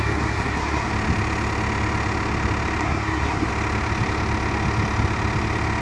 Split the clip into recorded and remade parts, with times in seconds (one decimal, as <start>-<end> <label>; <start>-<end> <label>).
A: 0.0-0.9 remade; 0.9-2.8 recorded; 2.8-3.5 remade; 3.5-5.8 recorded